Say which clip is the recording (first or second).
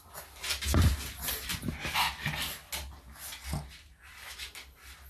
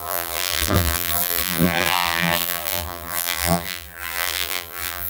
first